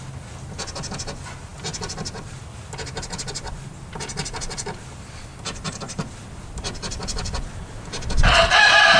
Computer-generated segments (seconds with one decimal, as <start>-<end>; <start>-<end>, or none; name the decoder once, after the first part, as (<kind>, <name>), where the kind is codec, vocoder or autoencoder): none